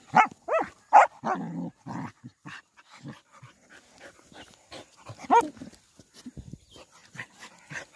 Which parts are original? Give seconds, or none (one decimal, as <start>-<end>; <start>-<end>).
0.0-8.0